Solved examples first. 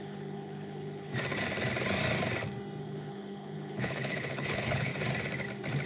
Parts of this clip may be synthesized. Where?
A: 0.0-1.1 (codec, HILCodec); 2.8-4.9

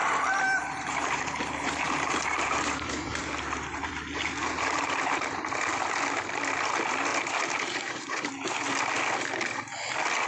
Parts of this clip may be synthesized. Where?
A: 0.0-3.9 (vocoder, BigVGAN v2); 7.1-8.3